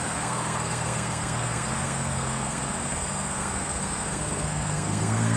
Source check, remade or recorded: remade